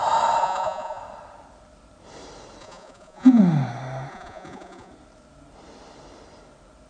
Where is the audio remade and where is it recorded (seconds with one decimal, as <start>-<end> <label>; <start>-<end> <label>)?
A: 0.0-0.4 recorded; 0.4-1.0 remade; 1.0-2.6 recorded; 2.6-3.4 remade; 3.4-4.1 recorded; 4.1-4.9 remade; 4.9-6.9 recorded

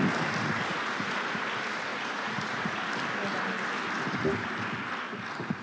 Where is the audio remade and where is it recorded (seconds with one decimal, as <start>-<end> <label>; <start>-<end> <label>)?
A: 0.0-0.7 recorded; 0.7-1.4 remade; 1.4-1.9 recorded; 1.9-2.9 remade; 2.9-5.6 recorded

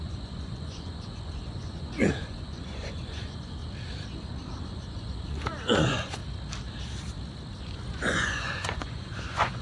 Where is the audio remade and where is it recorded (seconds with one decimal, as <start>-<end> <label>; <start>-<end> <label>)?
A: 0.0-3.6 remade; 3.6-4.6 recorded; 4.6-6.2 remade; 6.2-7.6 recorded; 7.6-9.6 remade